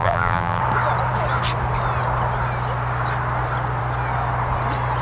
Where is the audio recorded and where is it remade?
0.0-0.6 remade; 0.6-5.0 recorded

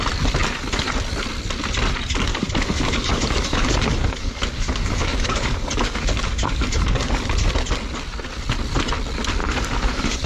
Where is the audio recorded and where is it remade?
0.0-2.3 recorded; 2.3-7.2 remade; 7.2-9.4 recorded; 9.4-10.3 remade